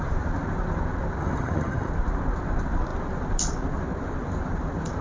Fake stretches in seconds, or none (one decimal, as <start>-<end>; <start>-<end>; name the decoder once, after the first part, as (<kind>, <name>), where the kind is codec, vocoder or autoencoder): 1.2-1.9 (vocoder, HiFi-GAN)